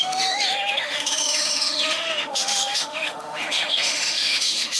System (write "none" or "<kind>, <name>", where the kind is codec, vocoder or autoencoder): autoencoder, DAC-VAE